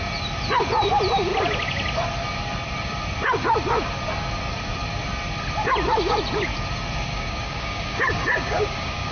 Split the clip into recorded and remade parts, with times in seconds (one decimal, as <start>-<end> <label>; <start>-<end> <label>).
0.0-7.1 recorded; 7.1-9.1 remade